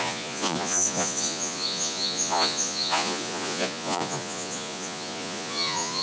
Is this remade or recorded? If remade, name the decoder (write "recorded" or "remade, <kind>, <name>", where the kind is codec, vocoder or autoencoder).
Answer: remade, vocoder, Vocos